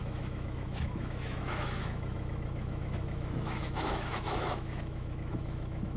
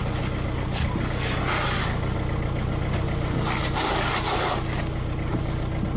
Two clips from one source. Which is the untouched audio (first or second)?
second